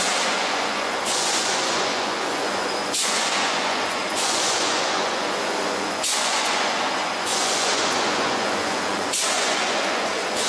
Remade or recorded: remade